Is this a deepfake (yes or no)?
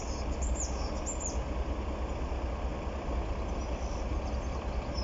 no